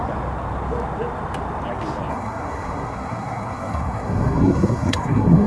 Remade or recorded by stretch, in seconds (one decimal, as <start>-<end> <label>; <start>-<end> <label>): 0.0-2.1 recorded; 2.1-5.5 remade